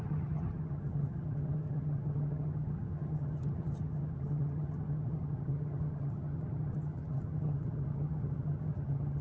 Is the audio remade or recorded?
remade